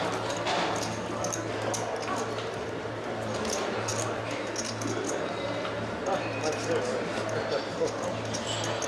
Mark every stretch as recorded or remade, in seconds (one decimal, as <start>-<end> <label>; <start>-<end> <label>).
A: 0.0-8.9 recorded

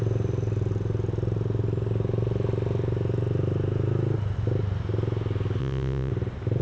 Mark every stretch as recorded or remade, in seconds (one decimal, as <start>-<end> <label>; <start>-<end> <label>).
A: 0.0-5.6 recorded; 5.6-6.1 remade; 6.1-6.6 recorded

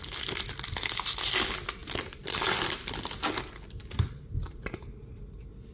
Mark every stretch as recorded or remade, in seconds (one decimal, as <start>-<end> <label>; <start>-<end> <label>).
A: 0.0-5.7 recorded

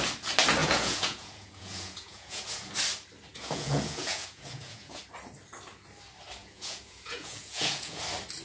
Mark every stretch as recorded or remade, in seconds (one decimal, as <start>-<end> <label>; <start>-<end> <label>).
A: 0.0-0.6 recorded; 0.6-2.7 remade; 2.7-3.3 recorded; 3.3-5.0 remade; 5.0-6.4 recorded; 6.4-8.0 remade; 8.0-8.4 recorded

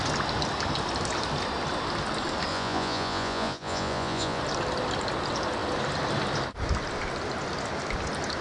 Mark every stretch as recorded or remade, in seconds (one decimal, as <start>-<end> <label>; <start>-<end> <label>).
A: 0.0-2.5 recorded; 2.5-4.4 remade; 4.4-8.4 recorded